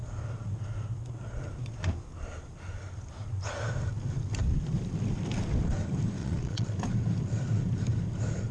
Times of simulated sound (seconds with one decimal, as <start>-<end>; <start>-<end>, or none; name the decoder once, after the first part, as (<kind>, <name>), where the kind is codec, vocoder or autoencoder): 6.2-6.7 (vocoder, Vocos)